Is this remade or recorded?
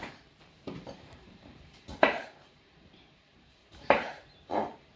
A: remade